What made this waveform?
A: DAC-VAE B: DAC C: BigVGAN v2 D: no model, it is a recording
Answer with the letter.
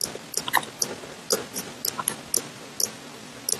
D